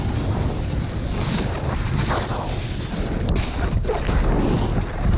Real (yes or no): yes